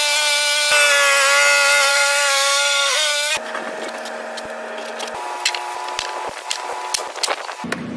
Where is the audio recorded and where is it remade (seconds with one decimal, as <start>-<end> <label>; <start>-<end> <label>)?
0.0-1.9 recorded; 1.9-3.3 remade; 3.3-8.0 recorded